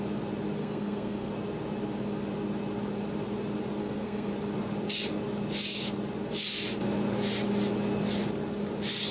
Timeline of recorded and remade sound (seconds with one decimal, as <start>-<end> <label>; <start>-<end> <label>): 0.0-0.6 recorded; 0.6-1.3 remade; 1.3-3.8 recorded; 3.8-4.3 remade; 4.3-9.1 recorded